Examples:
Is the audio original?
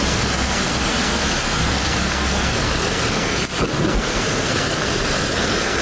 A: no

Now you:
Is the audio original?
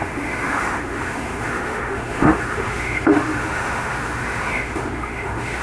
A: no